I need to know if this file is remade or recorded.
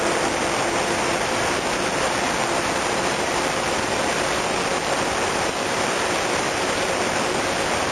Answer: remade